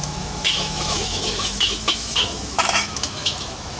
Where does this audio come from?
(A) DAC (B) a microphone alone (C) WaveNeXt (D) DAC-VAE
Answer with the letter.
D